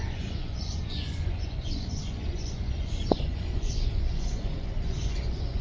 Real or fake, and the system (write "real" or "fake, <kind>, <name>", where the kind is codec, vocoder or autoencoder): fake, vocoder, Vocos